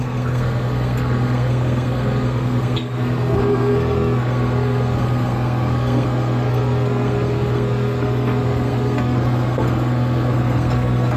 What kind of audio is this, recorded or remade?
remade